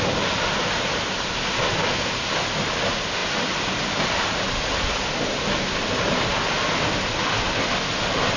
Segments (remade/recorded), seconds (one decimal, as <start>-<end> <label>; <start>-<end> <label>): 0.0-8.4 recorded

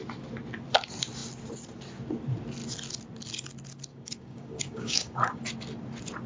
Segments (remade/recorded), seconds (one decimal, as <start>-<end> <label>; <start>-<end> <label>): 0.0-3.9 recorded; 3.9-5.4 remade; 5.4-6.3 recorded

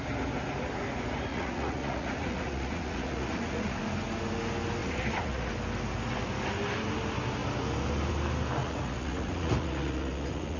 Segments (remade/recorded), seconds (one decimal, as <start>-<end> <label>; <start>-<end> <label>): 0.0-1.3 recorded; 1.3-3.8 remade; 3.8-4.8 recorded; 4.8-5.5 remade; 5.5-8.6 recorded; 8.6-10.6 remade

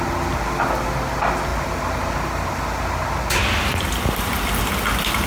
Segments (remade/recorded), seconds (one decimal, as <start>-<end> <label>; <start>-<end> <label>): 0.0-5.3 recorded

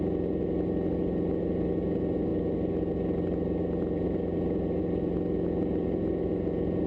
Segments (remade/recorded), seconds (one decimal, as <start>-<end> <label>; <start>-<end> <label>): 0.0-6.9 recorded

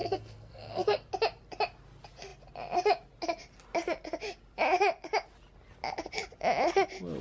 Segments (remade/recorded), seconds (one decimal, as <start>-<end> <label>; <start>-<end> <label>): 0.0-1.1 remade; 1.1-7.2 recorded

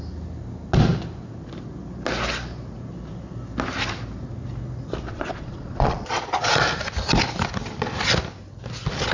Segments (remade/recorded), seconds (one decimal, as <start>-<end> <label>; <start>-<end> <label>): 0.0-5.1 recorded; 5.1-6.5 remade; 6.5-9.1 recorded

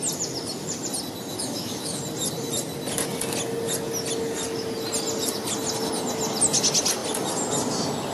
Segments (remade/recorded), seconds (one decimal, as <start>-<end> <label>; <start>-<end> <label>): 0.0-1.3 recorded; 1.3-2.0 remade; 2.0-8.1 recorded